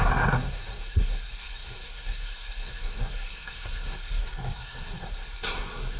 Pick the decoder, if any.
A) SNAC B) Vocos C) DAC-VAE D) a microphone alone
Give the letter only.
A